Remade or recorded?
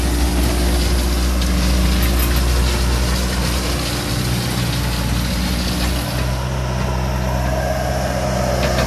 recorded